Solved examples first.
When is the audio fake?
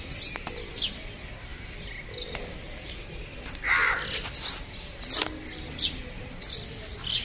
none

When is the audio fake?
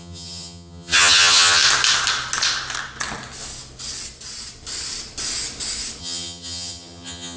0.0-1.6 (vocoder, HiFi-GAN); 6.0-7.4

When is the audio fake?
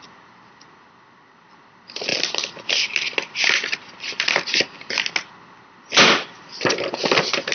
none